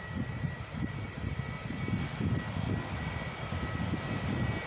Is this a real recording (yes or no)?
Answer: yes